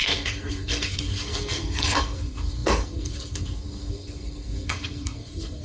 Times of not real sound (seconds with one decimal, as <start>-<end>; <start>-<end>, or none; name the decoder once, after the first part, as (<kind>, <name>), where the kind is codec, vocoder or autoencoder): 0.0-5.6 (codec, SNAC)